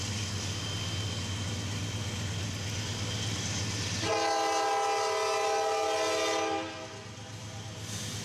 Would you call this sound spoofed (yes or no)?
no